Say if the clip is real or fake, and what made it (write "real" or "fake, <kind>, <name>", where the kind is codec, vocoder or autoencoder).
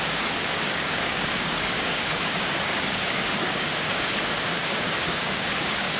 fake, codec, DAC